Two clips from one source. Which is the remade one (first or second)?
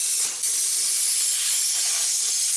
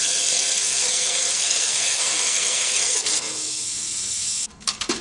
second